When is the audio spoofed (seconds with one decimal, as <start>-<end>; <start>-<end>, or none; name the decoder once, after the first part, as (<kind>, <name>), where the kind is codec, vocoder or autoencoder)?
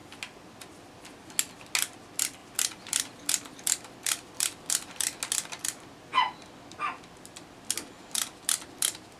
none